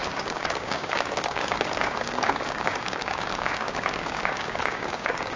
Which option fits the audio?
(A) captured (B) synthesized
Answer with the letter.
B